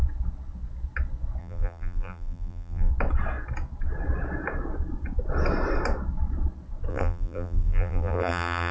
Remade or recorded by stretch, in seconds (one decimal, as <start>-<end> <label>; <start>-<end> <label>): 0.0-1.4 recorded; 1.4-2.9 remade; 2.9-6.9 recorded; 6.9-8.7 remade